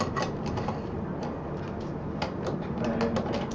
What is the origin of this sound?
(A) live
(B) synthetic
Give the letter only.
A